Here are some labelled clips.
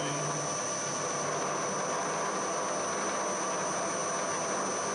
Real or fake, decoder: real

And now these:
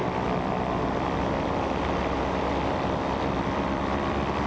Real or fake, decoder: fake, vocoder, BigVGAN v2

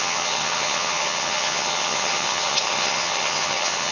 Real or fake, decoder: fake, vocoder, HiFi-GAN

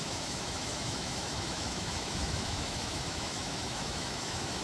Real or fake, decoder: fake, autoencoder, DAC-VAE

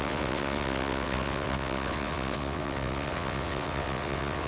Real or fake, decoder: fake, vocoder, WaveNeXt